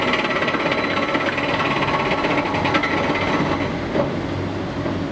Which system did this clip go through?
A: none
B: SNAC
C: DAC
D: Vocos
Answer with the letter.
A